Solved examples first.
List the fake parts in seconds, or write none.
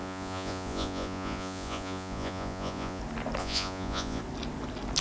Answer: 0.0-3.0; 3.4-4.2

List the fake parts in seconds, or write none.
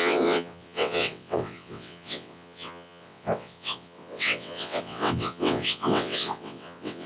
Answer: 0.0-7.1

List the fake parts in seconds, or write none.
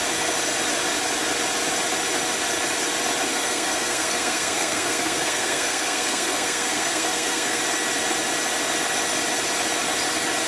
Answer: 3.3-7.6